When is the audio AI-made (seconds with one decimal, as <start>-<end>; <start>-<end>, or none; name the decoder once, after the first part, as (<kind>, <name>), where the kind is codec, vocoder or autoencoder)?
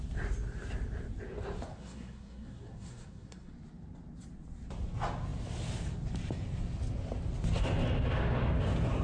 1.7-3.5 (codec, SNAC)